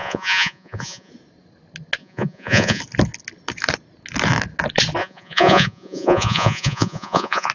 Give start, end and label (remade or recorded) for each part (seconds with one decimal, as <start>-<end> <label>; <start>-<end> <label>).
0.0-1.1 remade; 1.1-2.0 recorded; 2.0-2.8 remade; 2.8-5.0 recorded; 5.0-7.5 remade